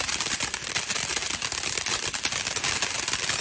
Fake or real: real